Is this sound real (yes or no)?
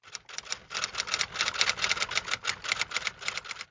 yes